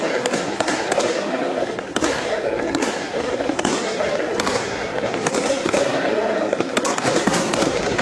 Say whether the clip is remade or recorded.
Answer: remade